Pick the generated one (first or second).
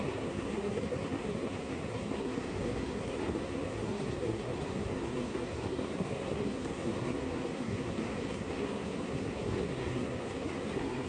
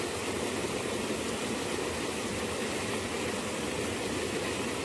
first